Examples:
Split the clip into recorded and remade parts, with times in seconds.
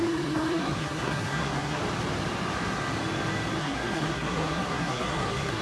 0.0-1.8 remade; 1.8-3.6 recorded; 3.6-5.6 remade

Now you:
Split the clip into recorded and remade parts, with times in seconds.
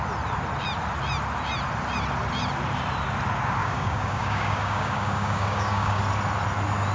0.0-3.6 recorded; 3.6-6.0 remade; 6.0-6.9 recorded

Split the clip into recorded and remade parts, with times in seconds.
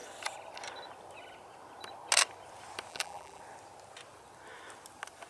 0.0-2.9 recorded; 2.9-3.4 remade; 3.4-5.3 recorded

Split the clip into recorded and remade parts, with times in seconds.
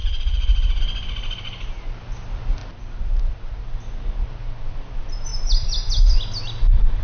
0.0-0.8 remade; 0.8-7.0 recorded